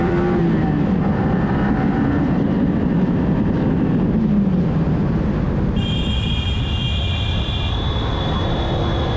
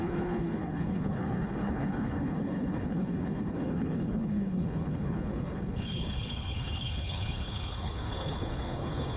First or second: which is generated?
second